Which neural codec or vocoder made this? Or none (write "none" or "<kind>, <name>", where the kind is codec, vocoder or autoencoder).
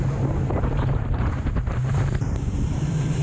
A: vocoder, BigVGAN v2